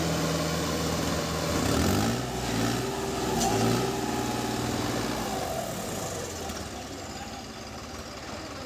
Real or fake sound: real